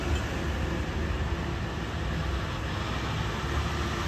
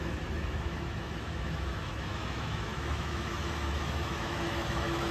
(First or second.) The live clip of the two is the first